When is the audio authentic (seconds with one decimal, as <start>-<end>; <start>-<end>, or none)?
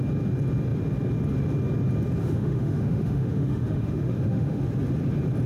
0.0-2.2; 4.6-5.5